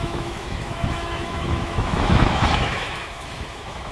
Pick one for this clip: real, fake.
fake